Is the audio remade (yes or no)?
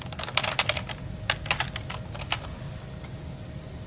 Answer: no